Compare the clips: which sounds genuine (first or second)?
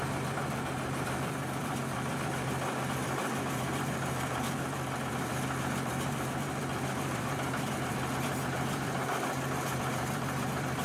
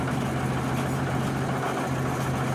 second